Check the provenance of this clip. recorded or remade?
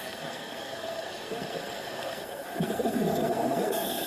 remade